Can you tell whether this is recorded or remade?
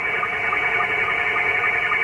remade